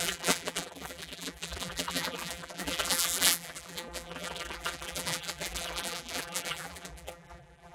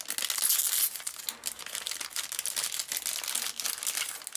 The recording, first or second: second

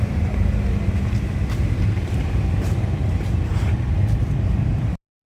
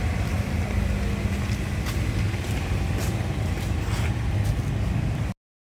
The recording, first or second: second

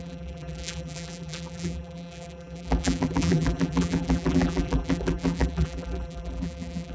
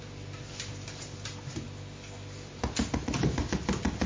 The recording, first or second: second